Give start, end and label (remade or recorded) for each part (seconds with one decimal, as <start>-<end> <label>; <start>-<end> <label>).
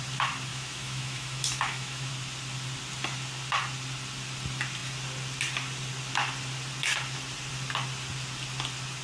0.0-0.5 recorded; 0.5-2.1 remade; 2.1-9.0 recorded